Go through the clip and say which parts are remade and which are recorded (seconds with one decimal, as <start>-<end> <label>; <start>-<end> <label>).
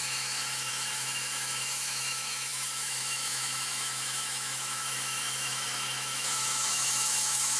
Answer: 0.0-7.6 remade